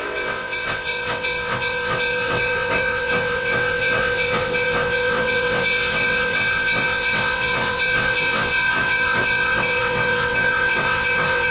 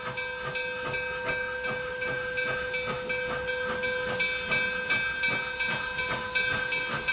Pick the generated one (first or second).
first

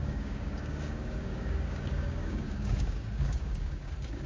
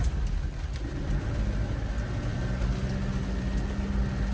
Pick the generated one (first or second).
first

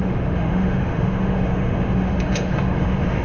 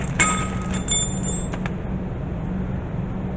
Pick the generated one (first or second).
first